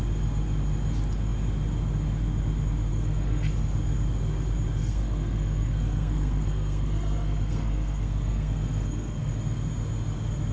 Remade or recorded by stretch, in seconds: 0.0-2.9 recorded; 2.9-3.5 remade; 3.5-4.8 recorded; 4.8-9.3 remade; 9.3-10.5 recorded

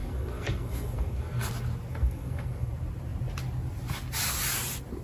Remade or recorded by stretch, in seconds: 0.0-1.5 remade; 1.5-1.9 recorded; 1.9-2.7 remade; 2.7-5.0 recorded

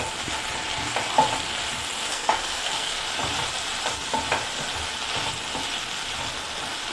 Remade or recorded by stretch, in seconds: 0.0-2.1 recorded; 2.1-3.0 remade; 3.0-6.9 recorded